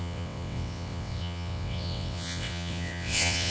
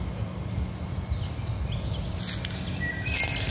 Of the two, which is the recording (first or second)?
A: second